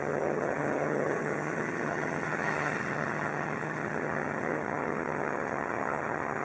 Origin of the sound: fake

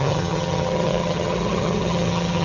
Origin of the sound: fake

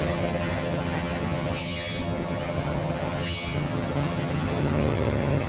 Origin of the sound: fake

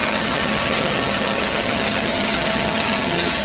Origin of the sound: fake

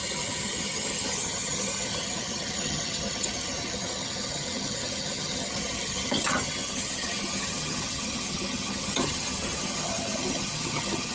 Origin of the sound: fake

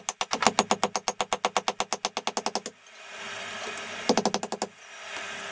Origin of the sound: real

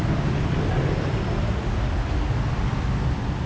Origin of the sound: real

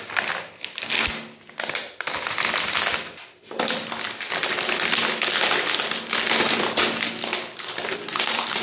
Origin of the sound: real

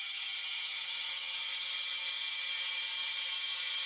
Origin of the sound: fake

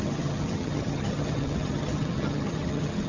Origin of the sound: fake